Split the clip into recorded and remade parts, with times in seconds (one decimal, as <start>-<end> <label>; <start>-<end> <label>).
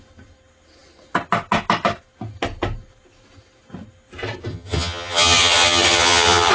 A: 0.0-4.5 recorded; 4.5-6.5 remade